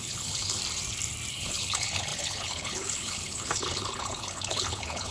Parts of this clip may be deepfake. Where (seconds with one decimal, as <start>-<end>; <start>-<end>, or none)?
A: 0.0-0.6; 1.3-5.1